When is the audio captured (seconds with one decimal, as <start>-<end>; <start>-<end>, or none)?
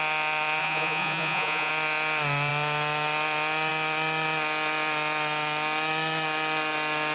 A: 0.0-0.6; 1.7-7.1